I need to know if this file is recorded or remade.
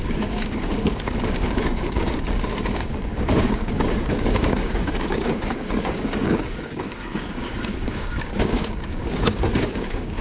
remade